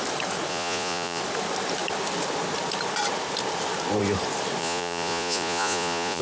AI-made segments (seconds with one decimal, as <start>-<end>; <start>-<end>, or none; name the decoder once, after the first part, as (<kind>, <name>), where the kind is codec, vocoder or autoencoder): 0.5-1.2 (vocoder, Vocos); 4.6-6.2